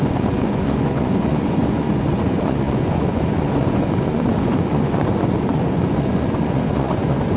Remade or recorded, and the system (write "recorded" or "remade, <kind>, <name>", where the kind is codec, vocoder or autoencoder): remade, vocoder, Vocos